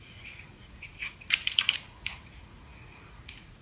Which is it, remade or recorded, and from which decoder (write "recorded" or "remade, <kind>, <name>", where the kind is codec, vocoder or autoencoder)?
remade, vocoder, Vocos